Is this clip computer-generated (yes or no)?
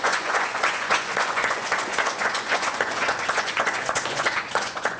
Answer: yes